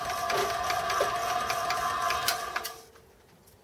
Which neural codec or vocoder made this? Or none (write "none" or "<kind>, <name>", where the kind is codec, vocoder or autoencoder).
none